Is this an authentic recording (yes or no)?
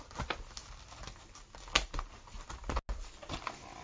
yes